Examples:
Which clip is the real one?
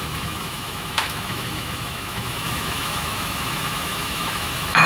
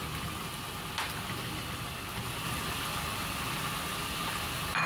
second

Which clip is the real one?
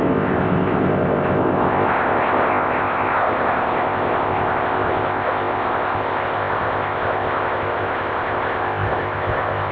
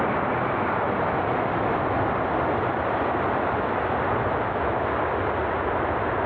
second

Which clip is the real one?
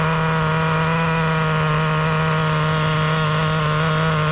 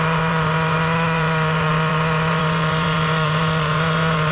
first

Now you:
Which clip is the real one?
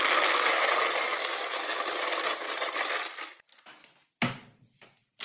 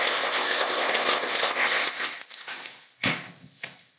first